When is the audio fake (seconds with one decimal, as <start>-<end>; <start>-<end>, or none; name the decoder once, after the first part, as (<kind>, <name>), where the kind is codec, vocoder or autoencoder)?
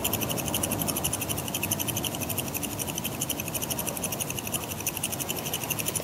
none